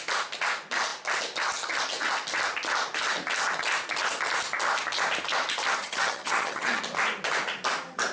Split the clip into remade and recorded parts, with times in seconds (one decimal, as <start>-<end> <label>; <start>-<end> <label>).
0.0-5.8 recorded; 5.8-6.8 remade; 6.8-8.1 recorded